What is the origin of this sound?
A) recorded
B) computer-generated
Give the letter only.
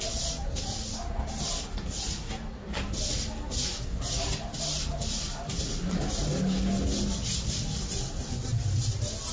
A